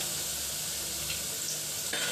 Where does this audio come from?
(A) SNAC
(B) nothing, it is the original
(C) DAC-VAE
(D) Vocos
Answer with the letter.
B